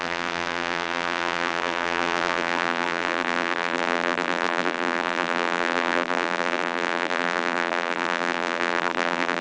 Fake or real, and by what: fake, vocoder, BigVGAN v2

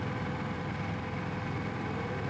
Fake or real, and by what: real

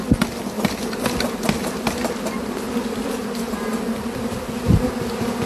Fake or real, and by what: real